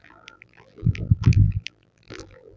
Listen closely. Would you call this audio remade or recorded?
remade